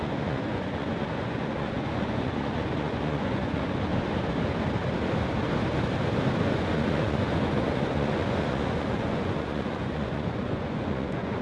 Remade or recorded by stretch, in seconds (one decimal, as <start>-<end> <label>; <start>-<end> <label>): 0.0-3.9 remade; 3.9-6.4 recorded; 6.4-11.4 remade